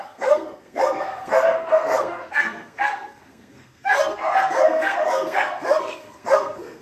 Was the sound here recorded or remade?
remade